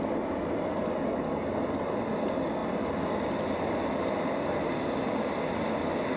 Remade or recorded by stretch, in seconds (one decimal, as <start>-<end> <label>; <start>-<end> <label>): 0.0-6.2 recorded